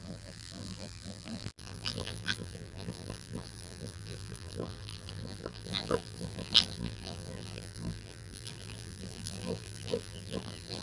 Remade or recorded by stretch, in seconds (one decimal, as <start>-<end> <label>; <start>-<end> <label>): 0.0-10.8 remade

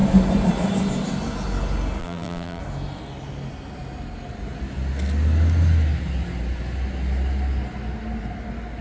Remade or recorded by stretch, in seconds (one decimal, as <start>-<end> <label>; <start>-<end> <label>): 0.0-2.0 recorded; 2.0-2.6 remade; 2.6-8.8 recorded

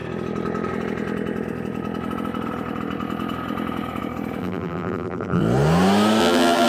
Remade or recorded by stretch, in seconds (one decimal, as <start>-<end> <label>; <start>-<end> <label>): 0.0-4.4 recorded; 4.4-5.4 remade; 5.4-6.2 recorded; 6.2-6.7 remade

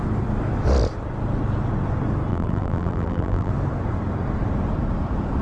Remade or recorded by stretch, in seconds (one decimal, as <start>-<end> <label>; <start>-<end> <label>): 0.0-2.3 recorded; 2.3-3.5 remade; 3.5-5.4 recorded

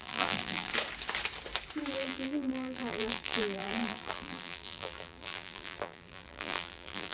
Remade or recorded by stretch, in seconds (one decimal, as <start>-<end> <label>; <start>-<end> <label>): 0.0-0.7 remade; 0.7-1.9 recorded; 1.9-7.1 remade

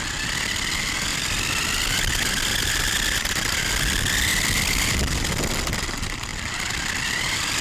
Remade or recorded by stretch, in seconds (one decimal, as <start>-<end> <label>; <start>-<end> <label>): 0.0-1.1 recorded; 1.1-3.6 remade; 3.6-4.3 recorded; 4.3-5.3 remade; 5.3-7.6 recorded

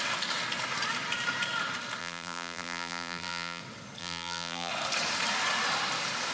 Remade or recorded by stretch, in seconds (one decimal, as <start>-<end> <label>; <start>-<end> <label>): 0.0-2.0 recorded; 2.0-3.6 remade; 3.6-4.0 recorded; 4.0-4.7 remade; 4.7-6.3 recorded